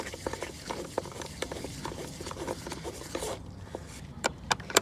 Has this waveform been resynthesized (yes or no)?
yes